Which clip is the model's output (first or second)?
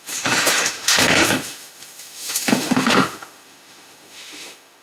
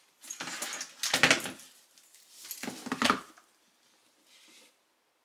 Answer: first